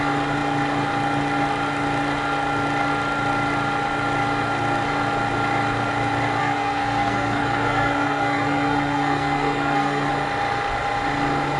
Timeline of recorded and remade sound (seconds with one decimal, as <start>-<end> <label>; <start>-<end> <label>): 0.0-6.4 recorded; 6.4-10.1 remade; 10.1-11.6 recorded